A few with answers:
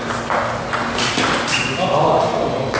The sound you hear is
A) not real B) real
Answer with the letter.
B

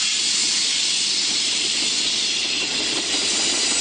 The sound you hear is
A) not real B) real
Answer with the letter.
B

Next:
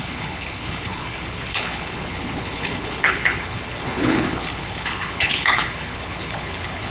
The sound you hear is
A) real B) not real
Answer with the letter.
B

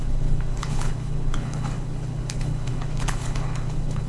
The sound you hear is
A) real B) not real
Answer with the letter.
B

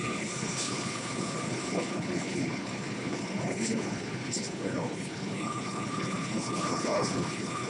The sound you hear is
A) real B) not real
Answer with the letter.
B